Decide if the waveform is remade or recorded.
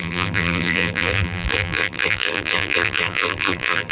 remade